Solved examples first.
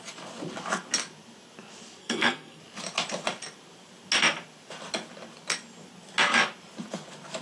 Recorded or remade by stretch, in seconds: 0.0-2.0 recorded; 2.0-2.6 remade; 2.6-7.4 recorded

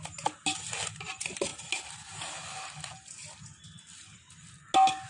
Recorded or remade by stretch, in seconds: 0.0-5.1 recorded

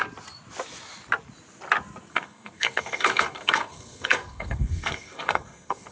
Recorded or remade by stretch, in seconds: 0.0-2.1 recorded; 2.1-5.9 remade

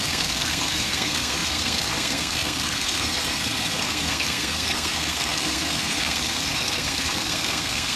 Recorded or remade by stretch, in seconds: 0.0-8.0 remade

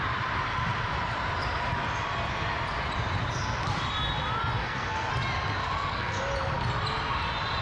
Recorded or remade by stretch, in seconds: 0.0-4.6 recorded; 4.6-5.1 remade; 5.1-5.6 recorded; 5.6-6.2 remade; 6.2-7.6 recorded

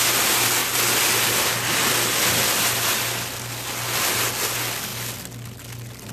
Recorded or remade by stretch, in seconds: 0.0-6.1 recorded

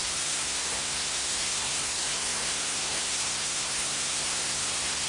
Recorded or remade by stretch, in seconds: 0.0-5.1 remade